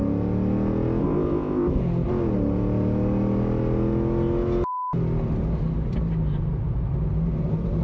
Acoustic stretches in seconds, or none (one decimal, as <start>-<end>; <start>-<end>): 0.0-1.0; 1.8-7.8